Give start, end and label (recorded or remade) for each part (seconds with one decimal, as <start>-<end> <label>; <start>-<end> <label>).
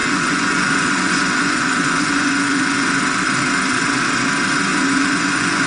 0.0-3.0 remade; 3.0-4.7 recorded; 4.7-5.7 remade